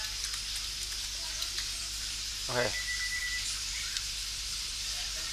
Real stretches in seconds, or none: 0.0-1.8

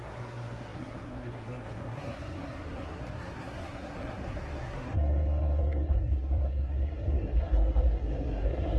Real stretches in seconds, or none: none

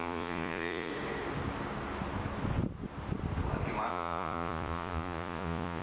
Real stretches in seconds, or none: 0.9-3.9

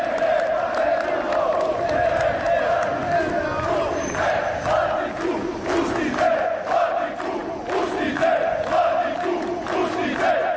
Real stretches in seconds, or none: 0.0-3.5; 4.4-10.6

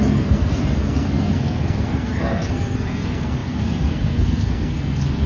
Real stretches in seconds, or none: none

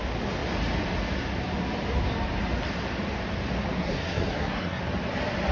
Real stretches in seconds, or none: 0.0-3.8; 4.8-5.5

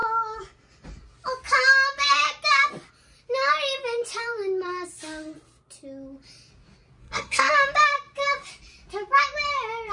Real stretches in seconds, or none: 0.0-7.0; 7.5-9.9